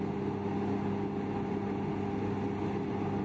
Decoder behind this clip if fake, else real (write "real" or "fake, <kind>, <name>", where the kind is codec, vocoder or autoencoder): real